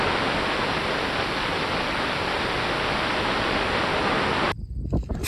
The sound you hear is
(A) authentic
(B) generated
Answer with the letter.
A